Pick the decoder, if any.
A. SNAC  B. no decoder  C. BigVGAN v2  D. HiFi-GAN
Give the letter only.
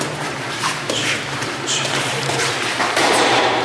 C